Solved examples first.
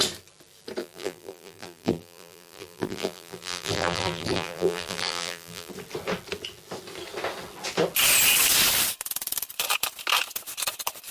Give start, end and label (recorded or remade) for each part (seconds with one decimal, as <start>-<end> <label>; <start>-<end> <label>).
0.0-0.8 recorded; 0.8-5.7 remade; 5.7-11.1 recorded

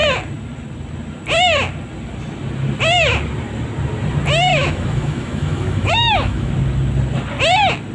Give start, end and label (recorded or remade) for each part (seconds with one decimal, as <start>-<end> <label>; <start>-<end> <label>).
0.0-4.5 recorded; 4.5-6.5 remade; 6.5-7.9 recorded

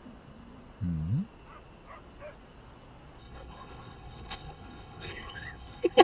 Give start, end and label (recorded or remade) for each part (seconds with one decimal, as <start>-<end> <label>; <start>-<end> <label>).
0.0-3.2 recorded; 3.2-6.0 remade

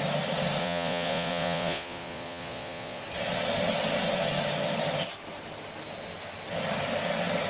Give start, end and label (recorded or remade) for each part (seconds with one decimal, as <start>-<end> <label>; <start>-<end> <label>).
0.0-0.6 recorded; 0.6-3.0 remade; 3.0-7.5 recorded